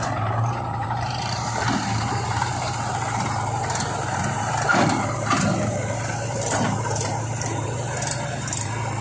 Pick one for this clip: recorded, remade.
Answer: remade